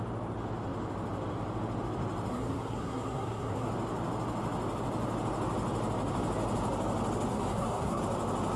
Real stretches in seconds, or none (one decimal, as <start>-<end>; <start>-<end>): 0.0-2.3; 3.7-7.3; 8.0-8.6